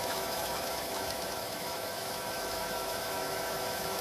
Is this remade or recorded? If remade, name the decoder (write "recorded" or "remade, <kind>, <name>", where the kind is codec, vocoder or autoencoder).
remade, autoencoder, DAC-VAE